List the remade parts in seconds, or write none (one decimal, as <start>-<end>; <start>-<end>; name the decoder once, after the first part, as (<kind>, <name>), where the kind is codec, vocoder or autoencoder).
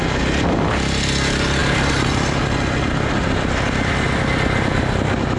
none